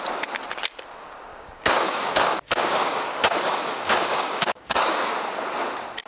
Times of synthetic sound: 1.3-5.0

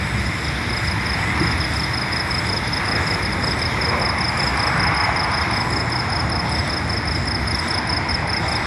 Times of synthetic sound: none

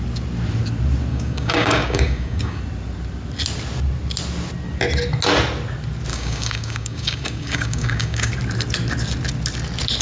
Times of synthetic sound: 1.1-2.6; 6.1-8.3